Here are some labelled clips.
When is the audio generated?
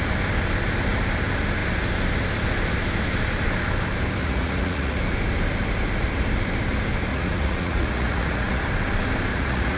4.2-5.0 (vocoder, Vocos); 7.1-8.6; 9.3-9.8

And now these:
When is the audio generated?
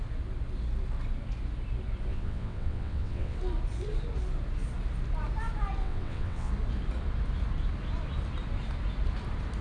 2.1-3.4 (vocoder, WaveNeXt); 5.8-6.5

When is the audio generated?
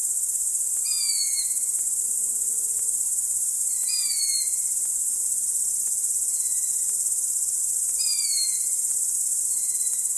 0.0-0.5 (vocoder, BigVGAN v2); 2.5-3.8; 7.6-10.2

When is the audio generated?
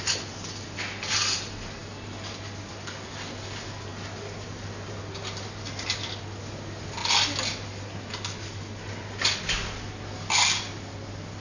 none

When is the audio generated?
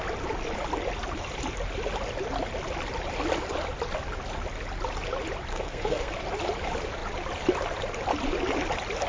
5.5-6.1 (codec, SNAC)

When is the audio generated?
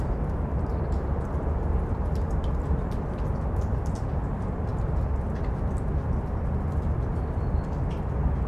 none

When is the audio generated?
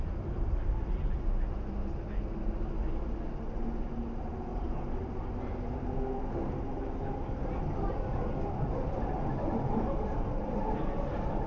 none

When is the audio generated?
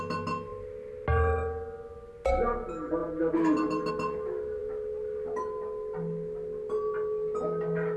none